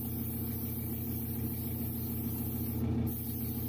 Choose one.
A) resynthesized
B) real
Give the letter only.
B